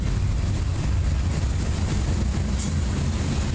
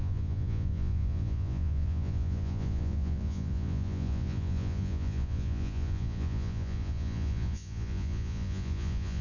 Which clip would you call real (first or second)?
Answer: first